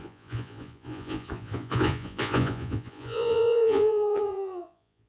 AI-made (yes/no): yes